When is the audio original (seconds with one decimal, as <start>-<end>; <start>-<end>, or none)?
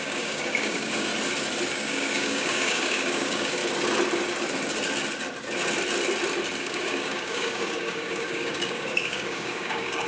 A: 1.1-1.7; 3.6-6.6